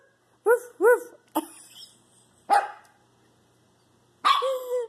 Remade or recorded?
recorded